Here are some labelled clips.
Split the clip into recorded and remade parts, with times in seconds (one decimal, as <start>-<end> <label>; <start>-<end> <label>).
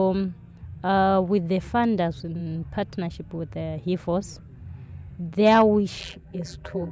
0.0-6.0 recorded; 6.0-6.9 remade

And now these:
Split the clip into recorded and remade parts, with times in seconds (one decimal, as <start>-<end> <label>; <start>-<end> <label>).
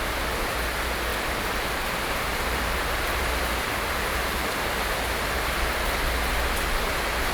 0.0-1.1 recorded; 1.1-5.3 remade; 5.3-7.3 recorded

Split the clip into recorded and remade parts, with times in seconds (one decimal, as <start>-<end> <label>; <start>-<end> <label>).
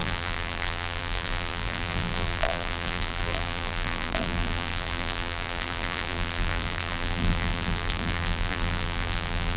0.0-9.6 remade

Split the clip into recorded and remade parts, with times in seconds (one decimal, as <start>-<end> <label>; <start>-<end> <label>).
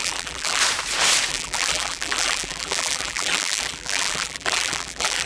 0.0-0.6 remade; 0.6-1.3 recorded; 1.3-5.3 remade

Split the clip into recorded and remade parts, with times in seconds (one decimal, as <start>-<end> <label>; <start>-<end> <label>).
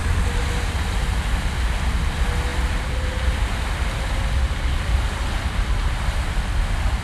0.0-2.5 recorded; 2.5-5.2 remade; 5.2-7.0 recorded